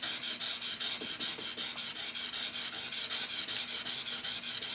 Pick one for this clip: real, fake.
real